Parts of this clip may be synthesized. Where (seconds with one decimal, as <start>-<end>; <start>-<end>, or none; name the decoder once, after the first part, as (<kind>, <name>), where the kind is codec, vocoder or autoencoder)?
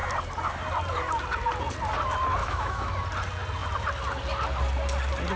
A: 2.4-2.9 (autoencoder, DAC-VAE)